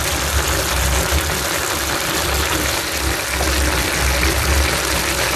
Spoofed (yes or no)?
no